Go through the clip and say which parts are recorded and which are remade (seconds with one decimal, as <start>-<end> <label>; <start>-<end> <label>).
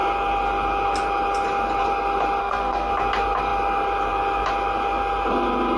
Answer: 0.0-2.4 recorded; 2.4-2.9 remade; 2.9-5.8 recorded